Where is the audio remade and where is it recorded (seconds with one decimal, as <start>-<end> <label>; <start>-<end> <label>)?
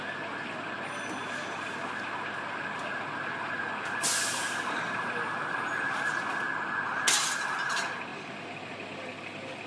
0.0-9.7 recorded